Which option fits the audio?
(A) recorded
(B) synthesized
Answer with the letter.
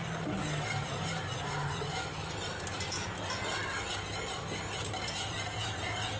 A